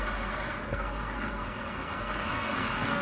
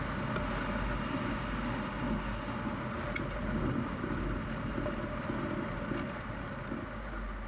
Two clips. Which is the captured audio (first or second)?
second